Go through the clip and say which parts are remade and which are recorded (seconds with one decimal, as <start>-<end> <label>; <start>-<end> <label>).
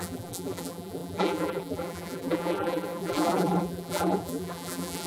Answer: 0.0-5.1 remade